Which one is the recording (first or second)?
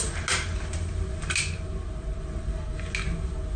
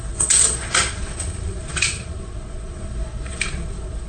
first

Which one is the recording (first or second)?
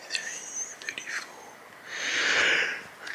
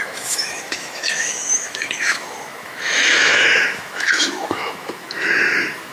first